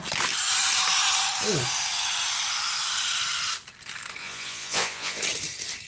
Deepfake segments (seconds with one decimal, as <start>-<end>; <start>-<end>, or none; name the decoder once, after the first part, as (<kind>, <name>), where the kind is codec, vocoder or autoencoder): 4.2-5.2 (vocoder, Vocos)